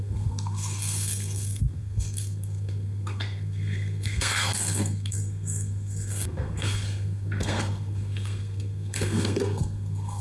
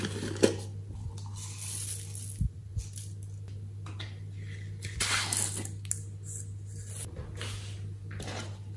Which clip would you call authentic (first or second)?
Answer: second